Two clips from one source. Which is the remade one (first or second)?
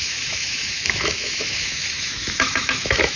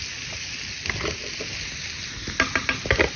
first